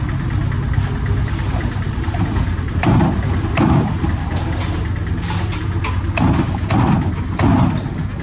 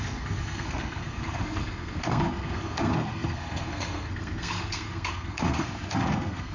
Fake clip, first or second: second